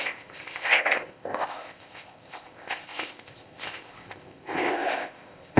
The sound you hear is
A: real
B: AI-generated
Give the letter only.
B